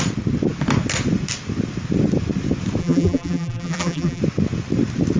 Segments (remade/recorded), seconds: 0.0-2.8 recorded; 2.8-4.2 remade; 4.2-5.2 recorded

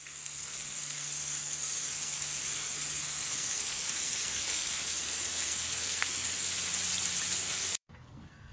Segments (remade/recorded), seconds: 0.0-6.5 remade; 6.5-7.3 recorded; 7.3-8.5 remade

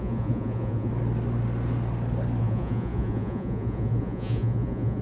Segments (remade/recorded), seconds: 0.0-0.9 remade; 0.9-2.4 recorded; 2.4-5.0 remade

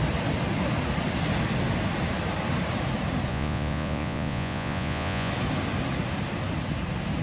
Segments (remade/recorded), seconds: 0.0-3.3 recorded; 3.3-5.3 remade; 5.3-7.2 recorded

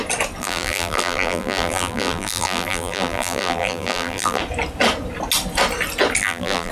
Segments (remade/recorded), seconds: 0.0-0.4 recorded; 0.4-4.4 remade; 4.4-6.2 recorded; 6.2-6.7 remade

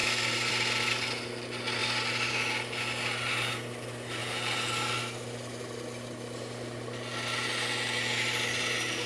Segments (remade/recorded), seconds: 0.0-0.5 remade; 0.5-1.8 recorded; 1.8-2.3 remade; 2.3-9.1 recorded

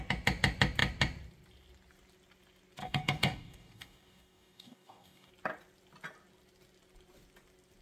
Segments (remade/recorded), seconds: 0.0-2.8 recorded; 2.8-5.3 remade; 5.3-7.8 recorded